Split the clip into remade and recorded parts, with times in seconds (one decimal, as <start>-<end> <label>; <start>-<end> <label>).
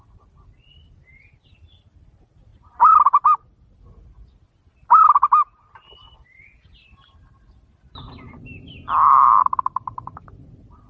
0.0-2.5 recorded; 2.5-4.5 remade; 4.5-6.0 recorded; 6.0-10.4 remade; 10.4-10.9 recorded